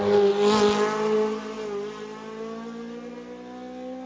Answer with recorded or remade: recorded